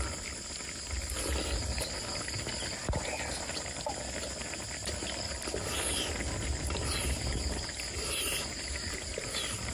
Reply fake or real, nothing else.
real